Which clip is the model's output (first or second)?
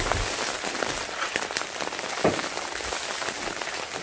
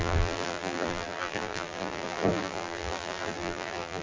second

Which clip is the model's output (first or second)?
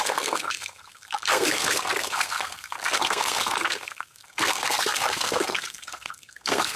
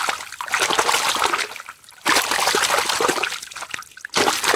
first